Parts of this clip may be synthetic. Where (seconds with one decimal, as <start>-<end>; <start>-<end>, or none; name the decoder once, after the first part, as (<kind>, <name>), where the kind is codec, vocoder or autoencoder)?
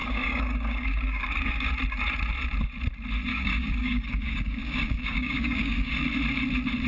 0.0-1.7 (codec, DAC); 3.3-5.9